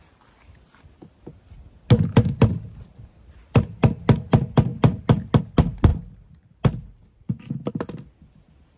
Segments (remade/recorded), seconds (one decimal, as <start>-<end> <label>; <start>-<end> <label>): 0.0-8.8 recorded